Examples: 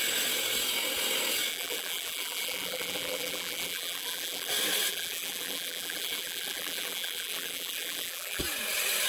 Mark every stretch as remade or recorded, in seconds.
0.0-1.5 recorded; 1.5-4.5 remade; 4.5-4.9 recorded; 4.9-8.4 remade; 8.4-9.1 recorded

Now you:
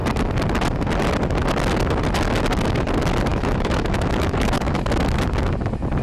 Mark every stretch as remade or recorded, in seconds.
0.0-3.3 recorded; 3.3-4.8 remade; 4.8-6.0 recorded

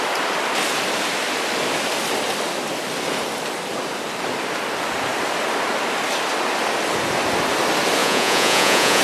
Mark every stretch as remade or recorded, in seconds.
0.0-8.0 recorded; 8.0-9.0 remade

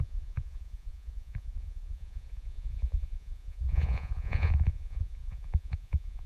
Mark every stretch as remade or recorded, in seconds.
0.0-6.3 remade